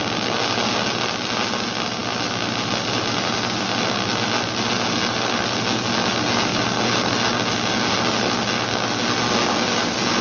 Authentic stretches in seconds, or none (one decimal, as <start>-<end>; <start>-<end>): 0.0-10.2